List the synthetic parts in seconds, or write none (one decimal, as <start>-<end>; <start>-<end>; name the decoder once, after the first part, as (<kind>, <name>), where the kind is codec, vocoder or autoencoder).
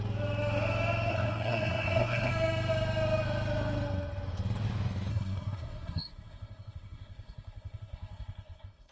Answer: 1.1-2.3 (codec, SNAC); 5.1-8.9